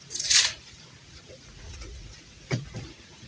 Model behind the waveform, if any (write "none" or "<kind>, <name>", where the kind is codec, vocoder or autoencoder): vocoder, Vocos